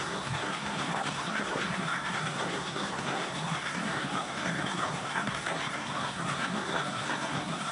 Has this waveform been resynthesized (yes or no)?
yes